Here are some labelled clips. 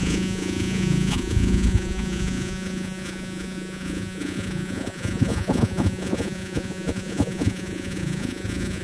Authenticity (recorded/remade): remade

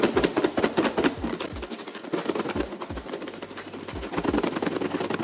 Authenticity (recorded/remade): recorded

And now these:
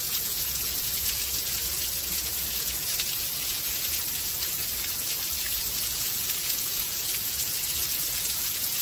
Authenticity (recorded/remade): remade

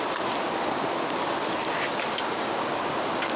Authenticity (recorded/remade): recorded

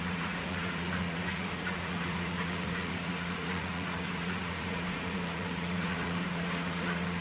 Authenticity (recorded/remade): remade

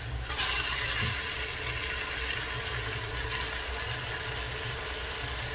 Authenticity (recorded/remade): recorded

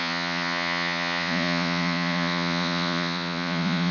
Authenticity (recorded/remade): remade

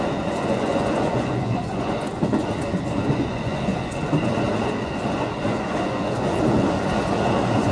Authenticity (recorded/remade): remade